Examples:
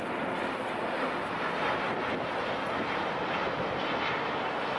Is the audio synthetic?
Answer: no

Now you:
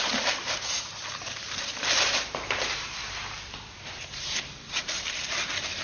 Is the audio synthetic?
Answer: yes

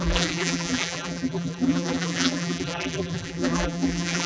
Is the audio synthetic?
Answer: yes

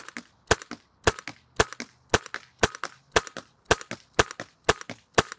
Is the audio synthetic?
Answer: no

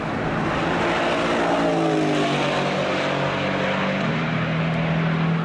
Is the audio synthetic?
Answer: no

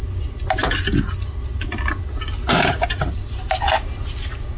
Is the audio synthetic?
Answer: no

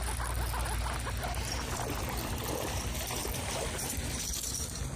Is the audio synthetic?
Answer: no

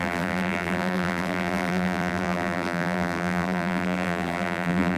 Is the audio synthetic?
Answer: yes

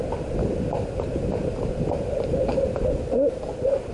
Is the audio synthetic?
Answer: no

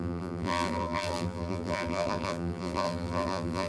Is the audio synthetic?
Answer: yes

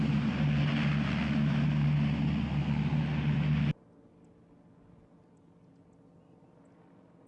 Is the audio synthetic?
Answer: no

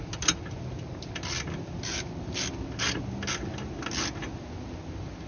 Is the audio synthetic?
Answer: no